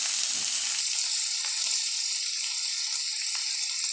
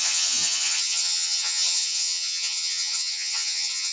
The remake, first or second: second